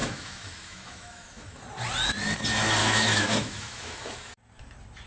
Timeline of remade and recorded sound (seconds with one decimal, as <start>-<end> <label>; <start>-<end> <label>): 0.0-1.6 remade; 1.6-2.8 recorded; 2.8-4.3 remade; 4.3-5.1 recorded

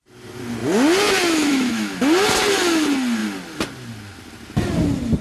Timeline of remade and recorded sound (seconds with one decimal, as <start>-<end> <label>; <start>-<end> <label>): 0.0-1.5 recorded; 1.5-2.0 remade; 2.0-5.2 recorded

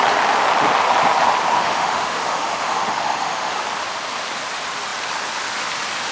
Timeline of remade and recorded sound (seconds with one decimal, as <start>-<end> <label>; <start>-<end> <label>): 0.0-1.6 recorded; 1.6-3.6 remade; 3.6-6.1 recorded

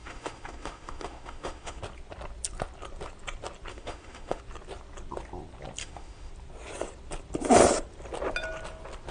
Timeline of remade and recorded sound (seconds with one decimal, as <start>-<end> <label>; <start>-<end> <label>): 0.0-1.8 remade; 1.8-3.7 recorded; 3.7-4.4 remade; 4.4-5.8 recorded; 5.8-6.3 remade; 6.3-9.1 recorded

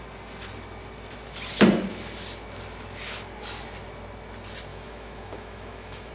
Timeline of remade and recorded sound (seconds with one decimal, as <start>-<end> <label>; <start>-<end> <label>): 0.0-4.7 recorded; 4.7-6.1 remade

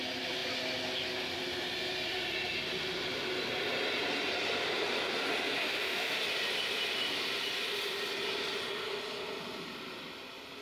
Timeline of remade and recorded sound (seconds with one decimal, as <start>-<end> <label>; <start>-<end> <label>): 0.0-5.6 recorded; 5.6-6.2 remade; 6.2-10.6 recorded